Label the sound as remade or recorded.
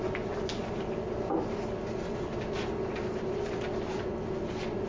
recorded